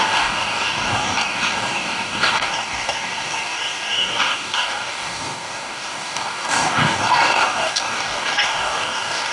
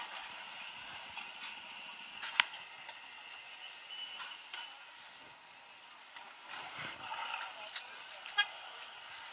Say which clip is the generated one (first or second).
first